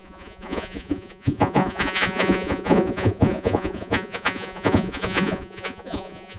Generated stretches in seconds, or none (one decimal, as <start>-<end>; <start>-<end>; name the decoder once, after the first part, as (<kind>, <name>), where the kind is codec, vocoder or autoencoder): 0.0-6.4 (vocoder, Vocos)